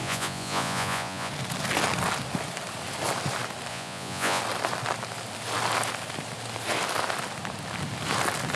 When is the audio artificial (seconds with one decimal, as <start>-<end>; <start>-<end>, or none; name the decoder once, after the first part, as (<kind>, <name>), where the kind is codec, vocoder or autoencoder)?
0.0-1.3 (vocoder, Vocos); 3.7-4.4